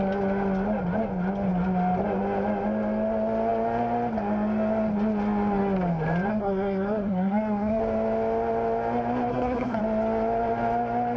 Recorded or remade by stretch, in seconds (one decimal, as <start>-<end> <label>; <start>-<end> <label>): 0.0-6.3 recorded; 6.3-7.8 remade; 7.8-9.3 recorded; 9.3-9.8 remade; 9.8-11.2 recorded